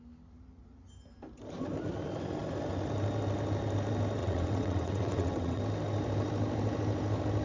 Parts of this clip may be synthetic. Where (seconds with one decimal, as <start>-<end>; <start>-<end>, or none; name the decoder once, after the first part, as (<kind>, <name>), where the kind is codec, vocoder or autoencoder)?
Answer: 4.2-5.6 (vocoder, WaveNeXt)